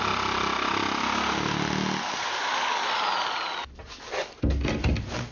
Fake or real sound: real